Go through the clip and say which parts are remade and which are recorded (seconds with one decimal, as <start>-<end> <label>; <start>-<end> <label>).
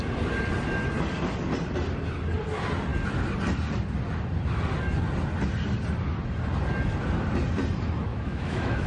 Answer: 0.0-8.1 recorded; 8.1-8.9 remade